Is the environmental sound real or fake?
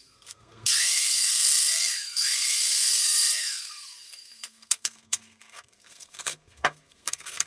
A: fake